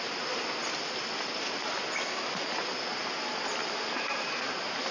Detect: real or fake real